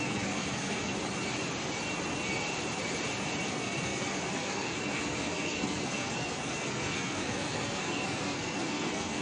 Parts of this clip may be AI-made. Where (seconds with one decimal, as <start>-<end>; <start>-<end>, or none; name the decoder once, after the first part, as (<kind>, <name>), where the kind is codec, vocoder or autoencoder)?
0.0-0.9 (codec, SNAC); 3.5-9.2